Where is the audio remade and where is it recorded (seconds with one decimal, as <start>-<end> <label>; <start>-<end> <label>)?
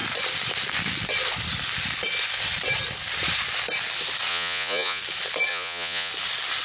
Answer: 0.0-4.3 recorded; 4.3-5.0 remade; 5.0-5.5 recorded; 5.5-6.1 remade; 6.1-6.6 recorded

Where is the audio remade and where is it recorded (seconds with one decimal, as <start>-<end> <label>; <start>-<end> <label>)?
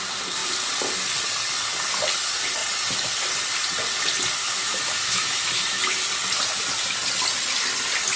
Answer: 0.0-4.4 recorded; 4.4-5.8 remade; 5.8-8.2 recorded